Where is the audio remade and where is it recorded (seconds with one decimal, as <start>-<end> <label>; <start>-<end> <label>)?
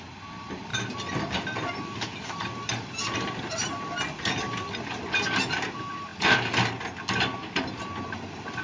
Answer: 0.0-8.6 recorded